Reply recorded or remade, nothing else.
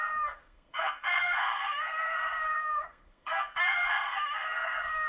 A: remade